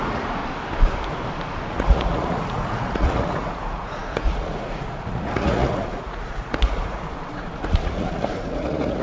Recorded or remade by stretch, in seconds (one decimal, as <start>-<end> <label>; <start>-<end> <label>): 0.0-0.4 remade; 0.4-1.7 recorded; 1.7-9.0 remade